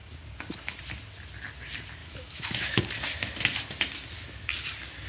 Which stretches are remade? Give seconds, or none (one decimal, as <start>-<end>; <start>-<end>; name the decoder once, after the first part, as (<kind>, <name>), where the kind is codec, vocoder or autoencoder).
2.0-2.8 (autoencoder, DAC-VAE)